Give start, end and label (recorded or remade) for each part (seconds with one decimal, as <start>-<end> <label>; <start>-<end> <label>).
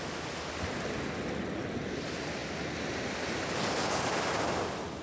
0.0-5.0 recorded